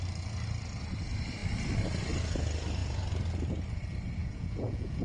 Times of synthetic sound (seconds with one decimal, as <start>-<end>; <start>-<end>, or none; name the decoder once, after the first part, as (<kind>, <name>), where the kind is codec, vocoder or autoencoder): 4.2-5.0 (vocoder, Vocos)